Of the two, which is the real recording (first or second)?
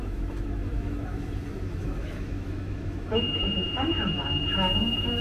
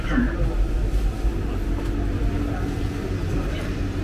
second